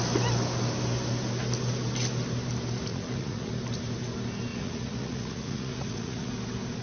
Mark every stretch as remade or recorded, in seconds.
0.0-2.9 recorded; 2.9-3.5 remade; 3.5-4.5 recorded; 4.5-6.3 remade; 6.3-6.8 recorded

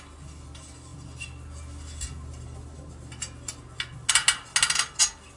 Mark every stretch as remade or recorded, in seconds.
0.0-5.4 recorded

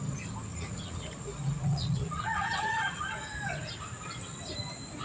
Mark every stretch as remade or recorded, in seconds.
0.0-0.5 recorded; 0.5-3.5 remade; 3.5-5.0 recorded

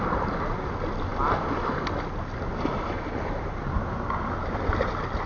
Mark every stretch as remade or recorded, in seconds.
0.0-5.3 recorded